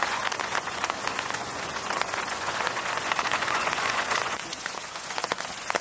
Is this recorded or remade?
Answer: remade